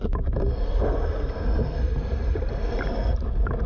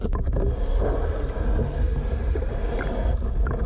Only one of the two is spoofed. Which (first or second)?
first